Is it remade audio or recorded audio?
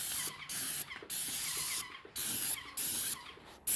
recorded